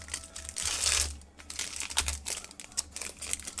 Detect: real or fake real